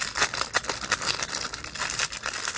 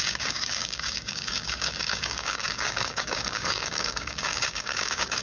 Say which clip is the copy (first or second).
second